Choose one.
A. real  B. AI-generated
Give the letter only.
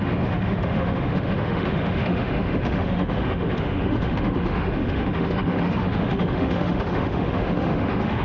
B